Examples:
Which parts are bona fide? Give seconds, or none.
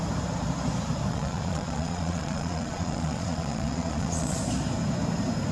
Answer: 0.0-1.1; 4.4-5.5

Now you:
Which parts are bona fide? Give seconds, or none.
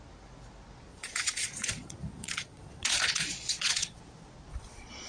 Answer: 0.0-0.9; 4.0-4.5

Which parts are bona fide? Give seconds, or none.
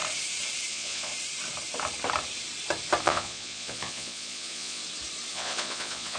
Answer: 0.0-0.7; 1.1-3.0; 4.8-5.3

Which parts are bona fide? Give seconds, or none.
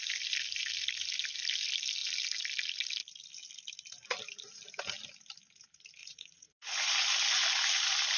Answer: 0.0-6.0; 6.7-8.2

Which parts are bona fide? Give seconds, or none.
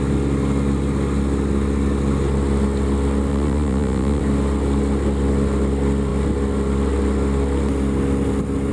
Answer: 0.0-3.3; 4.2-8.7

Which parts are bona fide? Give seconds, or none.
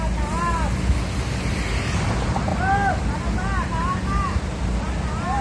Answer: 0.0-5.4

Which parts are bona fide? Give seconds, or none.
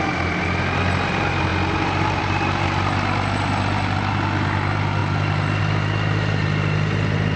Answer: 0.0-7.4